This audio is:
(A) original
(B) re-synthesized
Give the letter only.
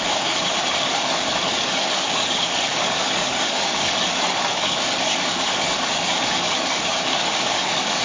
B